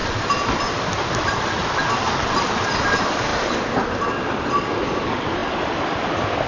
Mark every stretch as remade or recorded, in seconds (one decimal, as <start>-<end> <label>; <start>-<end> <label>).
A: 0.0-6.5 recorded